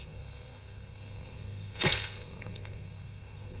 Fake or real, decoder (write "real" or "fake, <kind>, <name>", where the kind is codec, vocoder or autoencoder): fake, codec, SNAC